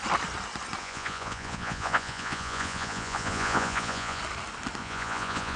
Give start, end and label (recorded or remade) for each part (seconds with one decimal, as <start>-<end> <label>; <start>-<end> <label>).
0.0-0.8 recorded; 0.8-4.2 remade; 4.2-4.8 recorded; 4.8-5.6 remade